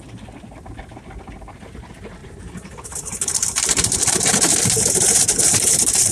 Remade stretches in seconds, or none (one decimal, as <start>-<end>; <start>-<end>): 2.2-6.1